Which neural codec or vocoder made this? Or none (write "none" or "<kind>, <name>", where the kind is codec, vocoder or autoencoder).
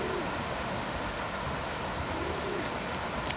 none